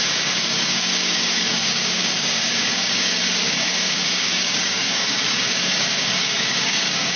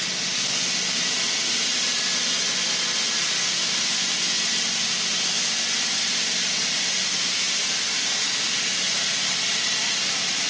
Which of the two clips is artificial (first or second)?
first